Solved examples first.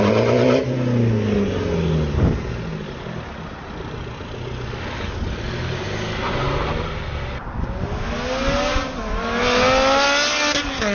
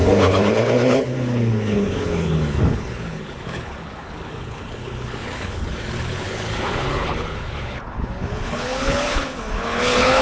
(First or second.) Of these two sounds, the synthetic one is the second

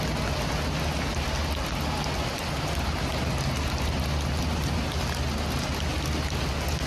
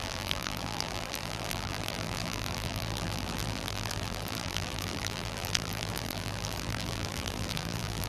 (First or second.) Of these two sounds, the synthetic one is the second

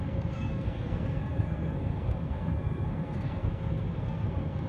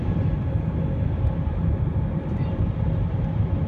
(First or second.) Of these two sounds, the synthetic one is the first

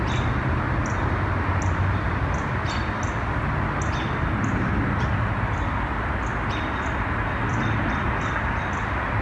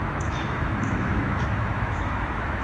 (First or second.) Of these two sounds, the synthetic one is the second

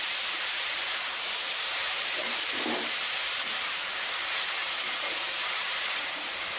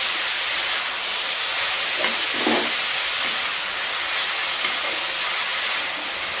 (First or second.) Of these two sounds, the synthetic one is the first